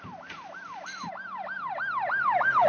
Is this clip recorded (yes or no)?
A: yes